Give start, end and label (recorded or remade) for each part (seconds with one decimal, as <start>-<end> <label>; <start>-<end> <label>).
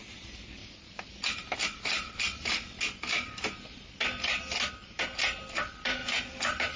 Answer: 0.0-6.8 recorded